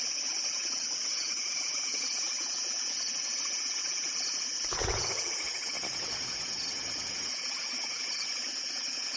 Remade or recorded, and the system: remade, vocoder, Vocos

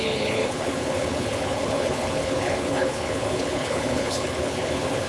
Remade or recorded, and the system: remade, codec, HILCodec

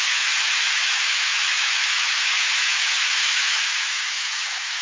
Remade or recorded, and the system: remade, autoencoder, DAC-VAE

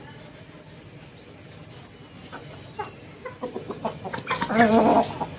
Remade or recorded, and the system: recorded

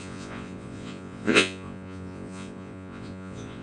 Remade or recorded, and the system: remade, vocoder, Vocos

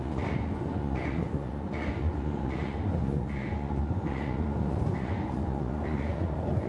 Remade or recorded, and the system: remade, vocoder, Vocos